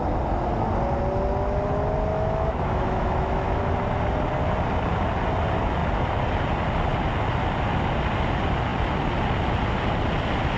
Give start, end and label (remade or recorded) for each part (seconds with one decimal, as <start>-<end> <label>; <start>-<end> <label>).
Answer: 0.0-2.1 recorded; 2.1-3.6 remade; 3.6-10.6 recorded